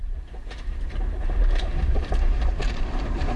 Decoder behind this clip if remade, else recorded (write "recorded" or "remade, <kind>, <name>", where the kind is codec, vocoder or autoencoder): remade, vocoder, BigVGAN v2